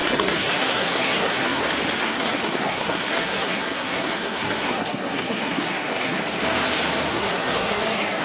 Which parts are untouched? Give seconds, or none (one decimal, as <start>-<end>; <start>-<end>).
1.6-2.0; 6.2-7.1